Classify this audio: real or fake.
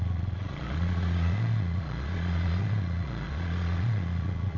fake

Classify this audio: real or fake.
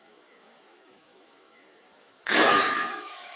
fake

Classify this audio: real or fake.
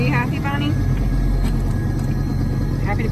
real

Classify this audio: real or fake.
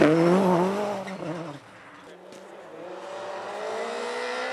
real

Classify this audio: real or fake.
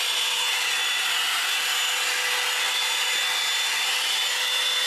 real